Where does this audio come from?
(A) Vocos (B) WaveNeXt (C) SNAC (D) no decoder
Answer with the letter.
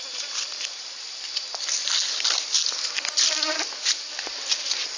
D